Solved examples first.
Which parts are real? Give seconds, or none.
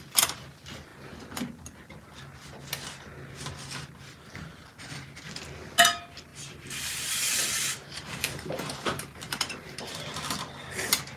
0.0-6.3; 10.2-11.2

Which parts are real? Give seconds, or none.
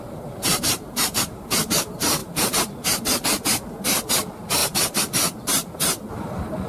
none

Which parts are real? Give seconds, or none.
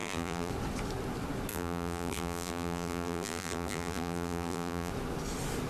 0.5-1.5; 4.9-5.7